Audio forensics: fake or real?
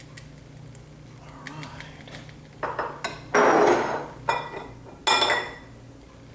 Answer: real